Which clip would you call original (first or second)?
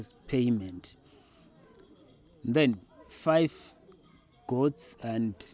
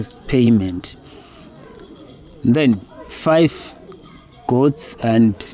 first